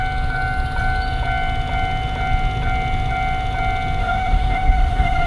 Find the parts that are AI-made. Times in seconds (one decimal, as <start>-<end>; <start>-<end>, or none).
4.0-5.3